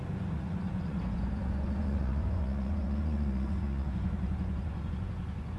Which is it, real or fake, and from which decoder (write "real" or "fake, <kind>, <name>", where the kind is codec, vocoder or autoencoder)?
fake, vocoder, Vocos